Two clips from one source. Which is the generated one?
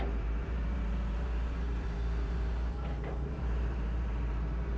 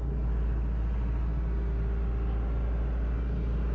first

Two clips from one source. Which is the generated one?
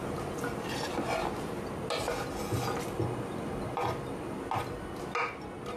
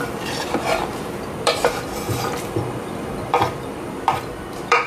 second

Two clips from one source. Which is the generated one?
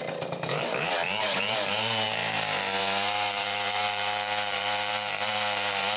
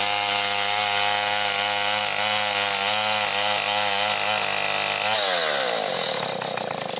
first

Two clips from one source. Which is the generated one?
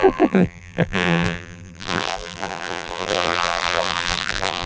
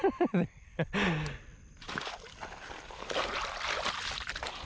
first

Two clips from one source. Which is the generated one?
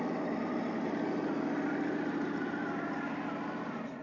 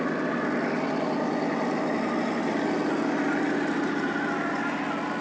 first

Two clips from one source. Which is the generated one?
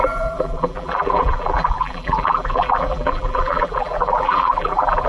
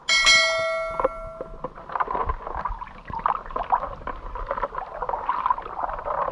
first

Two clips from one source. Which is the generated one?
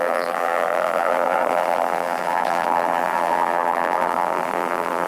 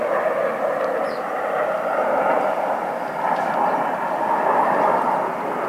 first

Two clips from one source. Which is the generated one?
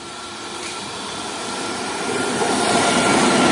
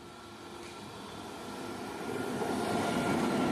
first